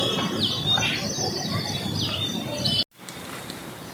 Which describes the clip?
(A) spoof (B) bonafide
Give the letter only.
B